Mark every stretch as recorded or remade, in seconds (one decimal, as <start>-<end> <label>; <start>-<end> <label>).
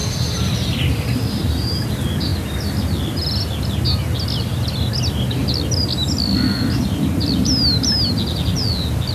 0.0-1.9 remade; 1.9-9.1 recorded